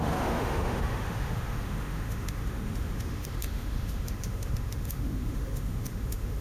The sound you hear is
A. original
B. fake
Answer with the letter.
B